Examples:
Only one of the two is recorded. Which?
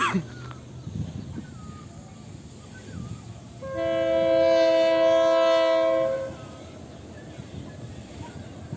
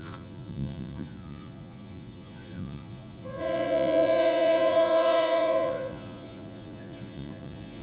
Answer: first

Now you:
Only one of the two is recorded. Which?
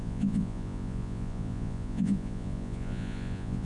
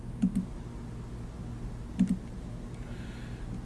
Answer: second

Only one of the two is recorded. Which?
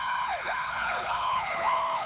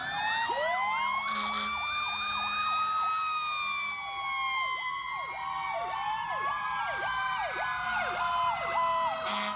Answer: second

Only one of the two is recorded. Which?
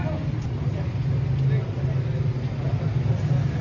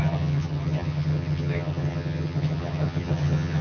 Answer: first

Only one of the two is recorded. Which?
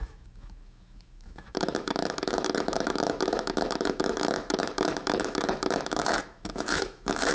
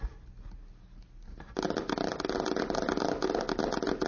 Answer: second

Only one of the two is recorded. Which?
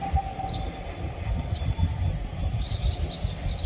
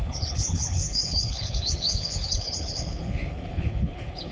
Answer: first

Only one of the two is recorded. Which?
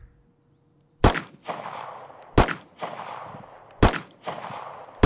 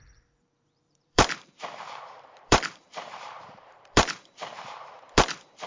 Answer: first